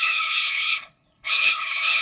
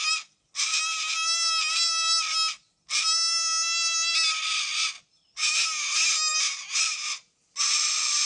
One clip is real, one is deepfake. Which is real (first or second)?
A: second